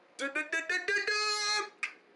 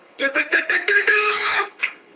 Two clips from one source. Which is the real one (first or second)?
first